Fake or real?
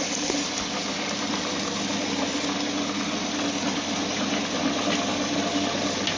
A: real